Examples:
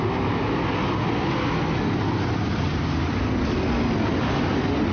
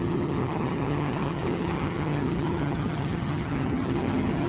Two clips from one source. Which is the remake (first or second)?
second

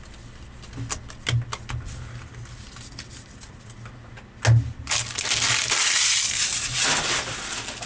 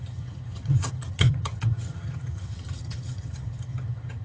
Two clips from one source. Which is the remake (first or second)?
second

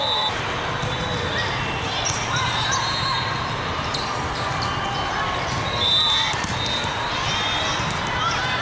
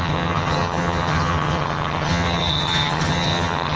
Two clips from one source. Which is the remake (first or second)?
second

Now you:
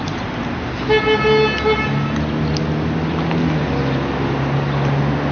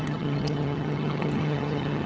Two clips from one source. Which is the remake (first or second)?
second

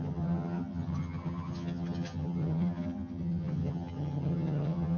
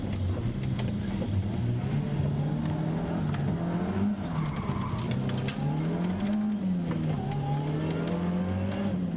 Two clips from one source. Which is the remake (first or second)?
first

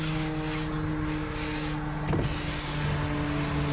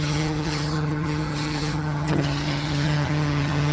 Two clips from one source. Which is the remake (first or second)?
second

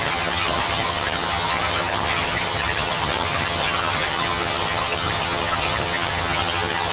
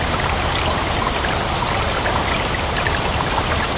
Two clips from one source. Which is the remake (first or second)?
first